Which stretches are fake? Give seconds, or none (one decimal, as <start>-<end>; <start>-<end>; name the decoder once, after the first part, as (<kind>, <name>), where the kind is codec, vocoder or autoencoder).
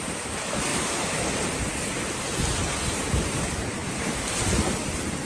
0.7-1.4 (autoencoder, DAC-VAE)